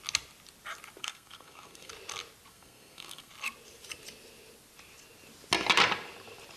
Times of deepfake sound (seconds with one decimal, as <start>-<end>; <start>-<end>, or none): 1.0-1.9; 2.5-3.3